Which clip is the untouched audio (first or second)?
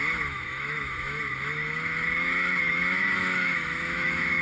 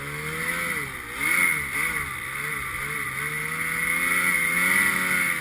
second